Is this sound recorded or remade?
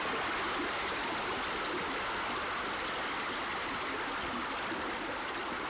recorded